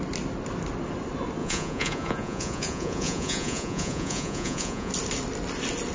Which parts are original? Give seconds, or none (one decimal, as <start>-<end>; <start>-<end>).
0.0-1.4; 4.9-5.9